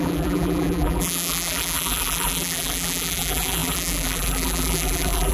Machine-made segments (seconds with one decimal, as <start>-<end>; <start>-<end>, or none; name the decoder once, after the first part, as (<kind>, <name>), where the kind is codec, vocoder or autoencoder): 0.0-5.3 (vocoder, BigVGAN v2)

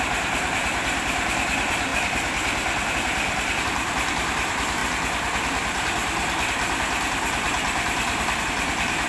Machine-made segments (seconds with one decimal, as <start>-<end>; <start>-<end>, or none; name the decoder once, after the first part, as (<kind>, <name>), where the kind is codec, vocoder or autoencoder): 0.0-1.9 (vocoder, BigVGAN v2); 2.9-4.8; 8.4-9.1

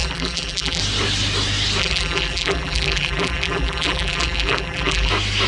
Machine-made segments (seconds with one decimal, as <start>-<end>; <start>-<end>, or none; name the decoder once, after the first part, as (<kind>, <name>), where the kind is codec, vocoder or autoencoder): 0.0-0.8 (vocoder, BigVGAN v2); 1.8-5.1

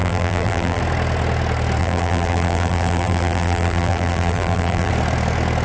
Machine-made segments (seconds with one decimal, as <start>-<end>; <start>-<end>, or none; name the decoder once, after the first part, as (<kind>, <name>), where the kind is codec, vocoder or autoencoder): 0.0-0.8 (vocoder, BigVGAN v2); 1.8-4.9

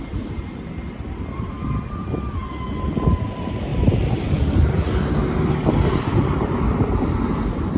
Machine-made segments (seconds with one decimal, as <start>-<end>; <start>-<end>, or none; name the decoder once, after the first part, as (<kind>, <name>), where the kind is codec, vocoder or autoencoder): 0.0-2.4 (vocoder, BigVGAN v2); 3.2-3.7; 4.3-5.2; 6.2-7.8

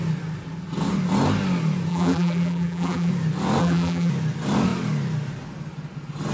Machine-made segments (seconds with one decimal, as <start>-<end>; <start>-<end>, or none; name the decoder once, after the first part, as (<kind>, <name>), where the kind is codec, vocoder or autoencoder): 1.9-3.1 (vocoder, BigVGAN v2); 3.6-4.1

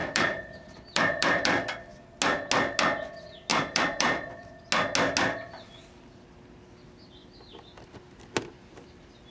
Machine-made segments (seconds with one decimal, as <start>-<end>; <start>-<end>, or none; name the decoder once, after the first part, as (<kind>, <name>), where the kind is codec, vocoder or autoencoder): 0.0-1.6 (vocoder, BigVGAN v2); 3.5-4.6